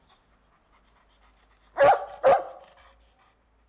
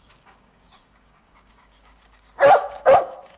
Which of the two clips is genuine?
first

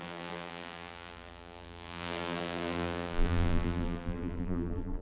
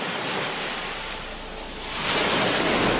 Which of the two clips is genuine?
second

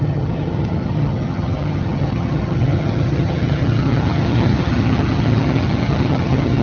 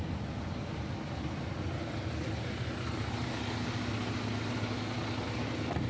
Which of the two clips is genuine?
second